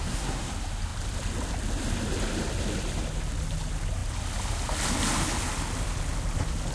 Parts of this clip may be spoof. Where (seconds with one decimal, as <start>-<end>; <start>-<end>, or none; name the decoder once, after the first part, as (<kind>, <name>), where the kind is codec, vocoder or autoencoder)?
0.0-0.5 (codec, SNAC)